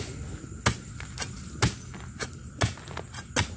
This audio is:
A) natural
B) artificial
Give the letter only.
A